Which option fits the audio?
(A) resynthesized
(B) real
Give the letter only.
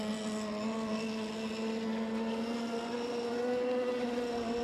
B